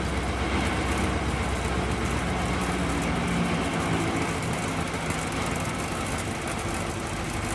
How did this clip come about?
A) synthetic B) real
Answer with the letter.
B